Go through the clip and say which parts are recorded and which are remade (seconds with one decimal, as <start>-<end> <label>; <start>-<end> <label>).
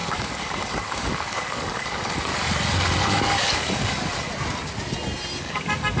0.0-2.3 remade; 2.3-3.0 recorded; 3.0-4.1 remade; 4.1-5.4 recorded; 5.4-6.0 remade